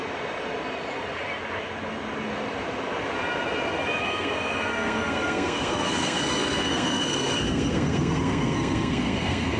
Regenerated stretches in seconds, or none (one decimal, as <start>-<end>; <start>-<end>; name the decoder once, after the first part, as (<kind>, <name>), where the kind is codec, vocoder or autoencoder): 4.0-9.6 (codec, SNAC)

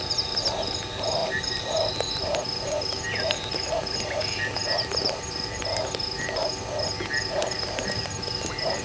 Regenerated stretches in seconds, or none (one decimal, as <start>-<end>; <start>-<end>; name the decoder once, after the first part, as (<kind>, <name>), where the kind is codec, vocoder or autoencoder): 0.0-6.4 (vocoder, BigVGAN v2); 7.3-8.8

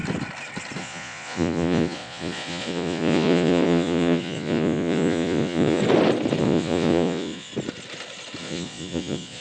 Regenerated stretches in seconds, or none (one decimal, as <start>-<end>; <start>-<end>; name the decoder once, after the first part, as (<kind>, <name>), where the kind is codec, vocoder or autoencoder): 0.8-5.8 (vocoder, Vocos); 6.4-7.5; 8.4-9.4

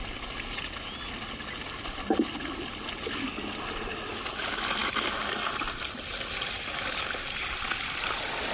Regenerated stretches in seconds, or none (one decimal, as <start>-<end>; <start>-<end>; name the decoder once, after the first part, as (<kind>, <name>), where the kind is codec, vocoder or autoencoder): none

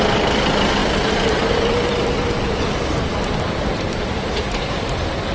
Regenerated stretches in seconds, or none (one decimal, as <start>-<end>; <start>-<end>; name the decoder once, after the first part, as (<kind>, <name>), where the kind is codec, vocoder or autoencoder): 0.8-3.3 (vocoder, BigVGAN v2); 3.7-4.8

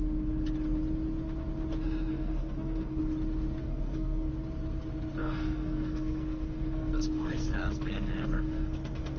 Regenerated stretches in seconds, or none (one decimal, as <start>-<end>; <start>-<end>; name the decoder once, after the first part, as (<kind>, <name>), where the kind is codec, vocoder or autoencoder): 2.1-3.0 (codec, SNAC); 3.6-4.3; 5.2-9.2

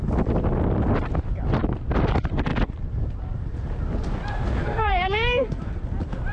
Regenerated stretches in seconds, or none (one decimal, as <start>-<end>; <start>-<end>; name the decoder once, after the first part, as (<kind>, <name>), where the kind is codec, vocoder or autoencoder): 4.6-5.6 (codec, SNAC)

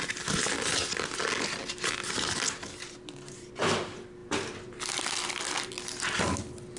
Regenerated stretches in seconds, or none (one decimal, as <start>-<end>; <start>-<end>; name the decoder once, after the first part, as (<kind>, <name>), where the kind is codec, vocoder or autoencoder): none